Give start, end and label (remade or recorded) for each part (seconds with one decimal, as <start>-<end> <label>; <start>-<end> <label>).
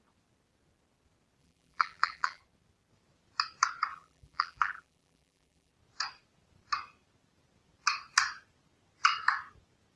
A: 0.0-1.4 recorded; 1.4-2.4 remade; 2.4-3.9 recorded; 3.9-5.7 remade; 5.7-10.0 recorded